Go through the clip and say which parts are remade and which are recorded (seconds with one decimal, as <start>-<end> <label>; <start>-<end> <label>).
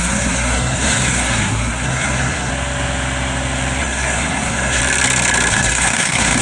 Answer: 0.0-2.5 remade; 2.5-3.8 recorded; 3.8-4.8 remade; 4.8-5.5 recorded; 5.5-6.4 remade